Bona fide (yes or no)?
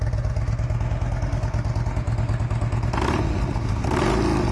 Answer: yes